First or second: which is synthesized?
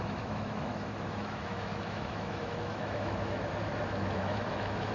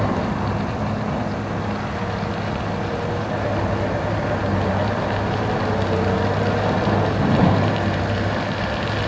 first